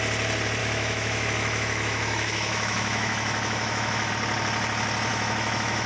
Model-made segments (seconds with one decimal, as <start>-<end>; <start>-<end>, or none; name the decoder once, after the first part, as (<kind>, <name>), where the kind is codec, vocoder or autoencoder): 0.6-4.1 (autoencoder, DAC-VAE); 5.1-5.9